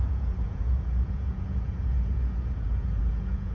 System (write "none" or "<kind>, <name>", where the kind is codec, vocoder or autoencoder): vocoder, Vocos